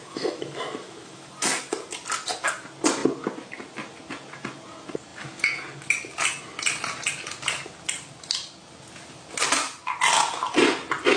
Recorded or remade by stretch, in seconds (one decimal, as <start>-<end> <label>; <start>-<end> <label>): 0.0-1.3 remade; 1.3-11.2 recorded